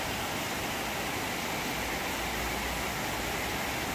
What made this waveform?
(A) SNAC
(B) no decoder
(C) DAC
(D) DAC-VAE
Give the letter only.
B